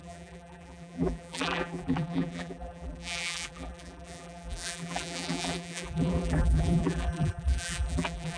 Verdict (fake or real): fake